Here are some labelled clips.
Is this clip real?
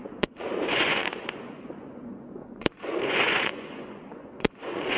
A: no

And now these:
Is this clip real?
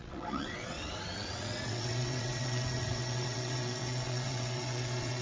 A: no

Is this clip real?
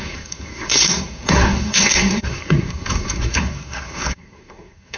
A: no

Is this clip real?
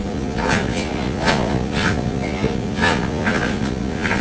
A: no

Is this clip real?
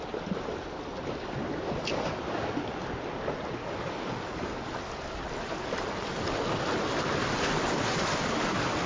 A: yes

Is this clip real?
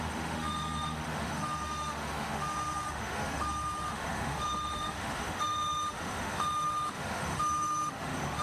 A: no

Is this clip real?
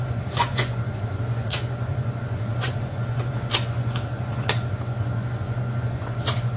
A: no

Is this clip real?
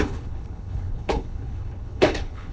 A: no